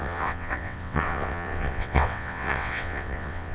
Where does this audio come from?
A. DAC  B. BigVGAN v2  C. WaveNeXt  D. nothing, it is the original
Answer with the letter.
C